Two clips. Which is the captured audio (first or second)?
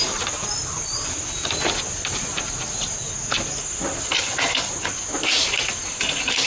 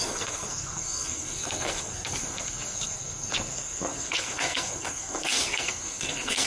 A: first